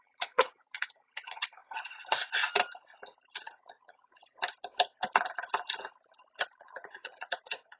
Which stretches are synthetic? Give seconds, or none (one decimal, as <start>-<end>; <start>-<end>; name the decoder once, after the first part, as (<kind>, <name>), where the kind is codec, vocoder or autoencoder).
0.0-1.6 (vocoder, Vocos); 3.3-4.2; 6.4-7.8

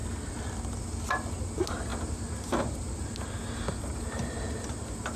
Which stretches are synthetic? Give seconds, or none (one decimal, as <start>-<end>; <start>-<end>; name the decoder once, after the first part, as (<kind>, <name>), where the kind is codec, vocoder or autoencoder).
none